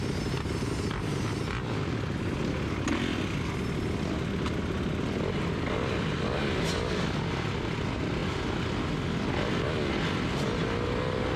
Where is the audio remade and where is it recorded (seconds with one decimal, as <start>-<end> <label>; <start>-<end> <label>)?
0.0-11.4 recorded